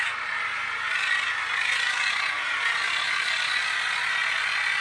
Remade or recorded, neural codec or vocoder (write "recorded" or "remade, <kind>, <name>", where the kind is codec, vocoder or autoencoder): recorded